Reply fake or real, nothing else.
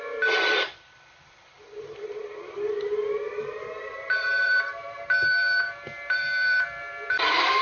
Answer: fake